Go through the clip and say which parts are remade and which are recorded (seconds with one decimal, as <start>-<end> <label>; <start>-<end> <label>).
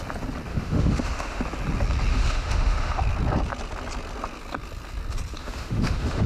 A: 0.0-0.5 recorded; 0.5-1.4 remade; 1.4-2.1 recorded; 2.1-3.0 remade; 3.0-5.4 recorded; 5.4-6.3 remade